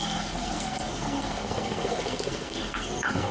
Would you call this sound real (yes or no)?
no